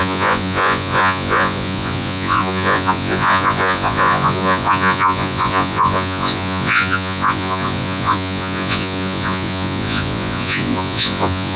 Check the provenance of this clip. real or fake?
fake